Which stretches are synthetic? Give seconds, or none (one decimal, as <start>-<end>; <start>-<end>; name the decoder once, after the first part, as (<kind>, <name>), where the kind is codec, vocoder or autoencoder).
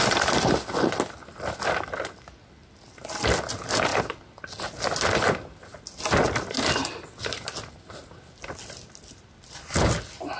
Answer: none